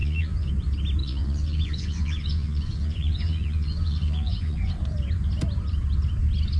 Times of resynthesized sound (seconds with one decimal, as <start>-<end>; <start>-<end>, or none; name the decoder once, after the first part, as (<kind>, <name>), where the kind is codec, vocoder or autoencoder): 0.0-0.5 (vocoder, Vocos); 1.0-4.7